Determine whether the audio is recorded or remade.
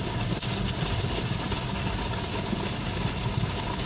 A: recorded